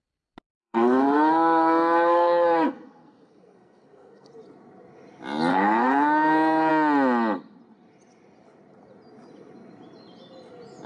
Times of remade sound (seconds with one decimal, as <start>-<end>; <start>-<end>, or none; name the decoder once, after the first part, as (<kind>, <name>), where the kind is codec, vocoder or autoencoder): 0.6-4.3 (codec, SNAC); 5.5-6.7